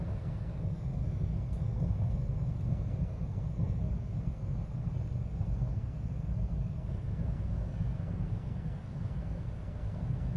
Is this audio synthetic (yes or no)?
yes